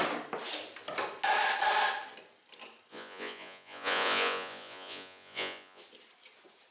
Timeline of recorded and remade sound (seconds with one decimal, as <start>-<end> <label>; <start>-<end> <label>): 0.0-2.9 recorded; 2.9-5.8 remade; 5.8-6.7 recorded